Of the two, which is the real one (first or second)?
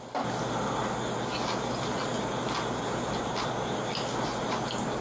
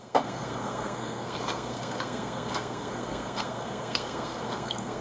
first